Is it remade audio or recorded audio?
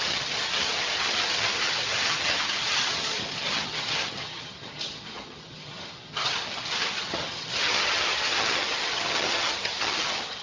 remade